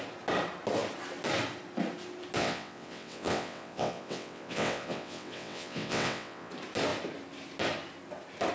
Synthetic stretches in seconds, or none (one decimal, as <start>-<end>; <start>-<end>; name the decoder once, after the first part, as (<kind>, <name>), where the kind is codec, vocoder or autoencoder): 2.4-6.5 (vocoder, WaveNeXt)